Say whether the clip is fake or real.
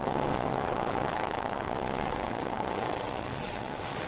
fake